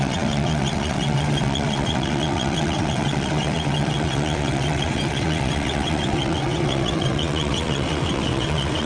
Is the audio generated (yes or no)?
yes